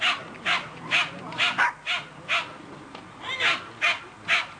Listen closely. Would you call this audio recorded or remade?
recorded